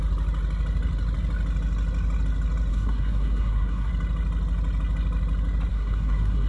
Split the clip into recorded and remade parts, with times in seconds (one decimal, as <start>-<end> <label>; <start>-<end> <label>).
0.0-2.7 recorded; 2.7-3.9 remade; 3.9-5.7 recorded; 5.7-6.5 remade

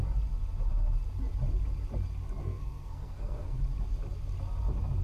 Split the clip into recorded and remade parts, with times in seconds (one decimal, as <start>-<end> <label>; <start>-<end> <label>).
0.0-2.4 recorded; 2.4-3.6 remade; 3.6-5.0 recorded

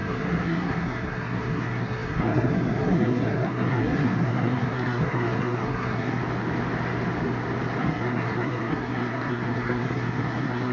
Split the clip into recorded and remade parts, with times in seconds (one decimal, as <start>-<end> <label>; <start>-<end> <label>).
0.0-6.2 remade; 6.2-7.8 recorded; 7.8-10.7 remade

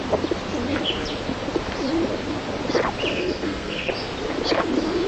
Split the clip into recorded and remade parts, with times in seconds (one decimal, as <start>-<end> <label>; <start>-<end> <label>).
0.0-3.1 recorded; 3.1-3.9 remade; 3.9-5.1 recorded

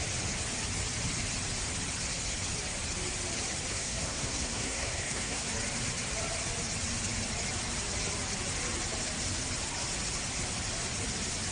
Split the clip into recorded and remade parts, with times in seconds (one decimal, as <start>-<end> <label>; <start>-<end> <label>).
0.0-3.7 recorded; 3.7-5.5 remade; 5.5-11.5 recorded

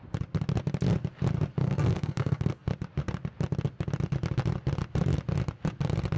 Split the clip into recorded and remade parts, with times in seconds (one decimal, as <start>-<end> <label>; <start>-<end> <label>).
0.0-1.6 recorded; 1.6-2.7 remade; 2.7-6.2 recorded

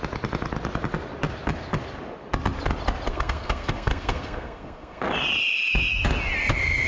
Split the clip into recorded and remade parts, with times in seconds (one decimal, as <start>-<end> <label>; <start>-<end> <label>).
0.0-3.1 recorded; 3.1-5.0 remade; 5.0-6.9 recorded

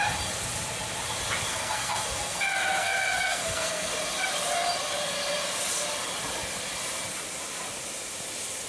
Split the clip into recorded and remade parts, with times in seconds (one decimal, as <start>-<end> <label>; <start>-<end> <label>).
0.0-1.5 recorded; 1.5-3.9 remade; 3.9-8.7 recorded